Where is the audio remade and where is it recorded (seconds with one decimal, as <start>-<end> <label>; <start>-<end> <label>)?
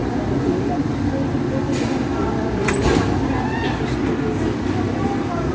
0.0-0.9 remade; 0.9-5.5 recorded